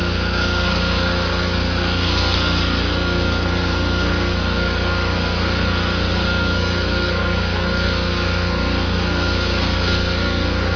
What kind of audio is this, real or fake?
fake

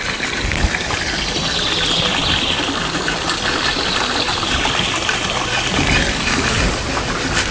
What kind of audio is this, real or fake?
real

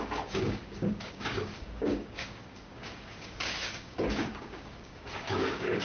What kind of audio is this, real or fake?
fake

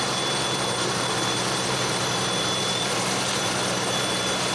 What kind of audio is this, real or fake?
fake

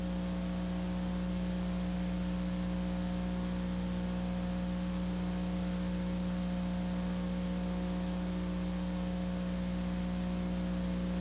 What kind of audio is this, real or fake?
real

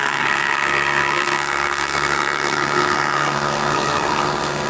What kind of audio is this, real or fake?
fake